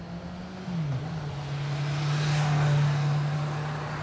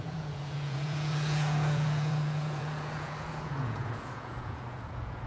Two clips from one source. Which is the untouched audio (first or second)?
first